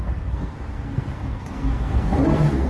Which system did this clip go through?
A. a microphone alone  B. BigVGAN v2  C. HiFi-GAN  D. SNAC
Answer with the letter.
D